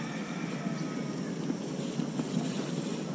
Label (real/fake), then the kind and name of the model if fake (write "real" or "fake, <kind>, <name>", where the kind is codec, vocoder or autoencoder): real